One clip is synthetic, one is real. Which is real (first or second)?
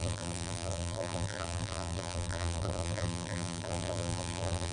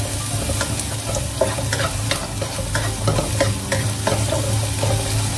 second